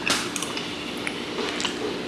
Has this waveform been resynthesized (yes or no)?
no